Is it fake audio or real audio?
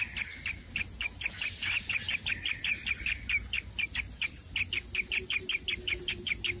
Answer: real